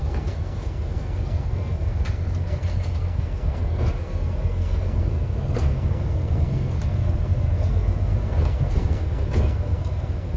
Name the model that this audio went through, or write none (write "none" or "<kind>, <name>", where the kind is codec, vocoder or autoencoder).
codec, SNAC